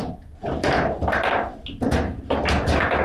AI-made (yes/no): no